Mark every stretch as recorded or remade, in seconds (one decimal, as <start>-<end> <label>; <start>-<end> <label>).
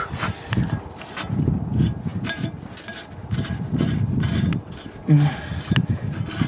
0.0-6.5 recorded